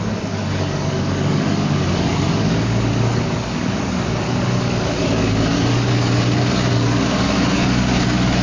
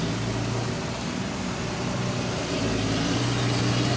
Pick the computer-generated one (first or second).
first